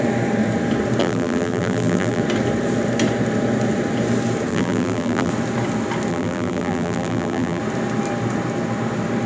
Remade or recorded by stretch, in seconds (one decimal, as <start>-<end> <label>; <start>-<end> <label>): 0.0-1.0 recorded; 1.0-2.2 remade; 2.2-4.5 recorded; 4.5-5.3 remade; 5.3-6.1 recorded; 6.1-7.6 remade; 7.6-9.3 recorded

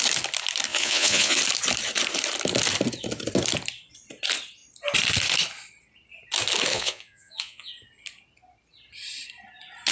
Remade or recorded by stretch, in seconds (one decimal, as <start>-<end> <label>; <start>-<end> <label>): 0.0-0.7 recorded; 0.7-1.4 remade; 1.4-6.7 recorded; 6.7-7.7 remade; 7.7-9.9 recorded

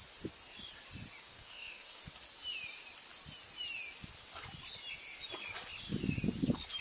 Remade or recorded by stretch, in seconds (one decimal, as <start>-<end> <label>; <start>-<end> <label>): 0.0-1.2 recorded; 1.2-2.0 remade; 2.0-6.8 recorded

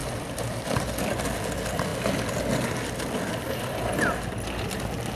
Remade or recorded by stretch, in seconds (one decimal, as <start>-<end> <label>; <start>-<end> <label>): 0.0-5.2 recorded

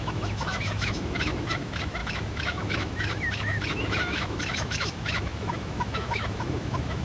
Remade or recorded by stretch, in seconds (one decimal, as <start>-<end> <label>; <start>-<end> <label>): 0.0-7.0 remade

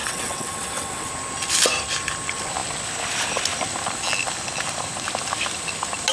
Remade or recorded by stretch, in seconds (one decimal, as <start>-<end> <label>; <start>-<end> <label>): 0.0-1.1 remade; 1.1-6.1 recorded